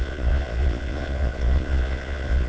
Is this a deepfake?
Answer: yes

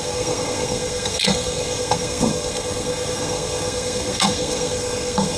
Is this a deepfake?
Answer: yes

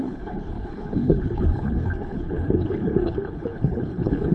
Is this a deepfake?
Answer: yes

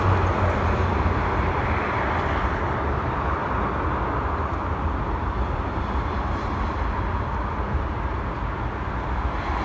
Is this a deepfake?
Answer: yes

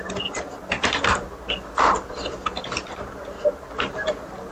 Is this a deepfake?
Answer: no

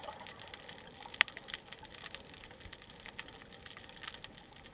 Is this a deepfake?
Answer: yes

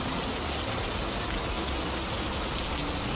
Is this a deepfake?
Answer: no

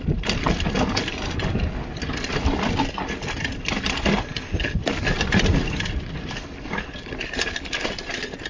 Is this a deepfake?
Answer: yes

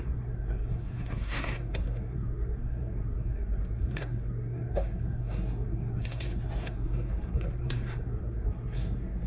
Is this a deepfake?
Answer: yes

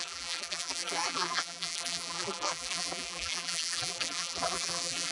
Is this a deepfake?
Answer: yes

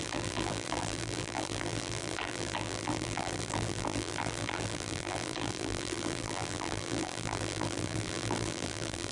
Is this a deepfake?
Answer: yes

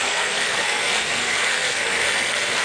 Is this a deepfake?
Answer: yes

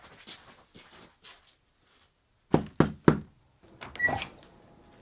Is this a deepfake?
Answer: no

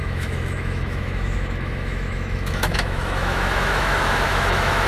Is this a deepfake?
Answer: yes